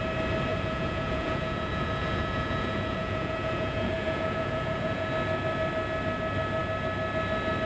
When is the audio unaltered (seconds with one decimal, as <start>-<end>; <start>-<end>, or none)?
0.0-0.5; 5.1-7.7